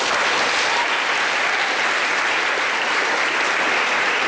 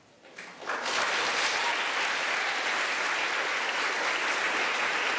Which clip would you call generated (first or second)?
first